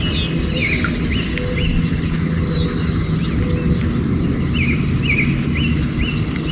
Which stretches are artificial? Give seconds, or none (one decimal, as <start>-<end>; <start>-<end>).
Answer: none